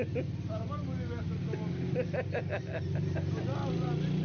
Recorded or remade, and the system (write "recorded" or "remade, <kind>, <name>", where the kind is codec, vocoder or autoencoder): recorded